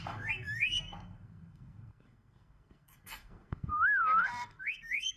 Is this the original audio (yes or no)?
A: no